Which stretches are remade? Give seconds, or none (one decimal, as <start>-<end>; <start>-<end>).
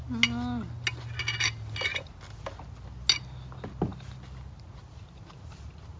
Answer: none